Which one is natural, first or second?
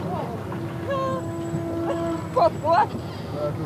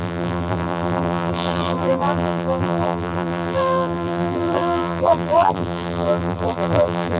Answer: first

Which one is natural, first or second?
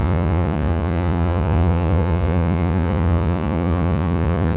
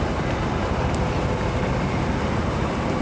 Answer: second